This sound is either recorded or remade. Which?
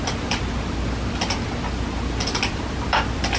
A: recorded